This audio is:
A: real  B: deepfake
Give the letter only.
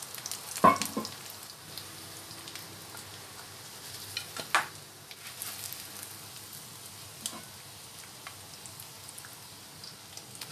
A